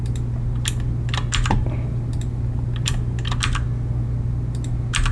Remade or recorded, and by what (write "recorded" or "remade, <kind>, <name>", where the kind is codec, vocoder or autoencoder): recorded